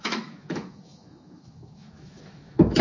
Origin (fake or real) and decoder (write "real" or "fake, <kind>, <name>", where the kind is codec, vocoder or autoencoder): fake, autoencoder, DAC-VAE